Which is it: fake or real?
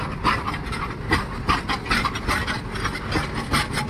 real